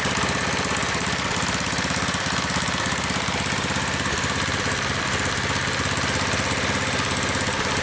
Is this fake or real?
real